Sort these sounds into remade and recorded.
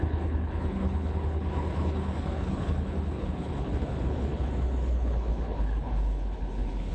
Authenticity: remade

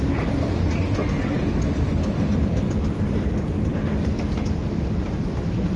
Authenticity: recorded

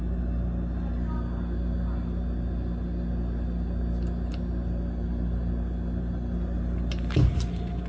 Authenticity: recorded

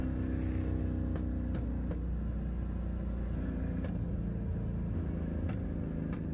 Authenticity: recorded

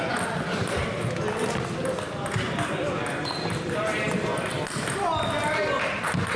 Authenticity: recorded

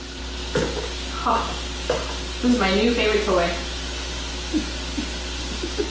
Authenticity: recorded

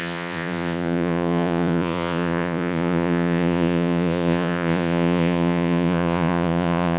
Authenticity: remade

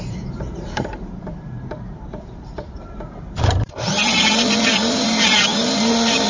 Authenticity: remade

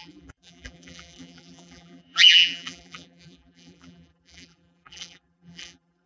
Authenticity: remade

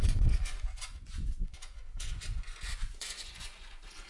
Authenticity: remade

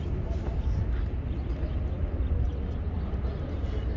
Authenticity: recorded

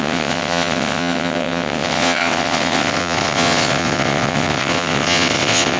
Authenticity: remade